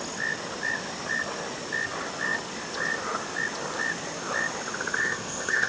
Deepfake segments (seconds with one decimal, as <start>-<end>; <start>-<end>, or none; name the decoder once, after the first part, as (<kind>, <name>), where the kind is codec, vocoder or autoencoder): 5.0-5.7 (codec, ZipCodec)